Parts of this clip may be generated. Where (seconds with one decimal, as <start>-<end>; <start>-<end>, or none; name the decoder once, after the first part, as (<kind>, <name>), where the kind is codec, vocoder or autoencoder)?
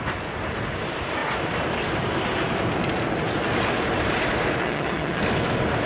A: 4.6-5.2 (vocoder, HiFi-GAN)